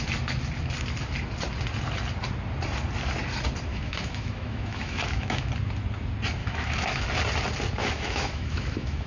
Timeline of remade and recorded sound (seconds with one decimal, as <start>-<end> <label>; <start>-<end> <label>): 0.0-3.7 recorded; 3.7-5.5 remade; 5.5-6.4 recorded; 6.4-7.0 remade; 7.0-7.8 recorded; 7.8-9.1 remade